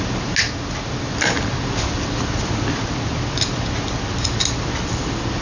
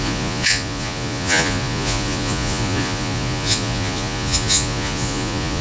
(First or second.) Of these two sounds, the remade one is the second